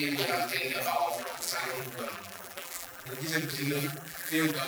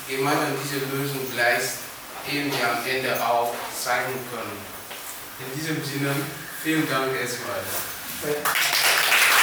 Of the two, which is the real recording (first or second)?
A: second